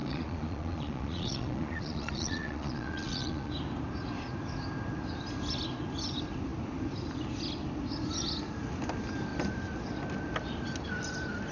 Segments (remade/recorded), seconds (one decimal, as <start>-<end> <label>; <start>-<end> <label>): 0.0-3.5 remade; 3.5-11.5 recorded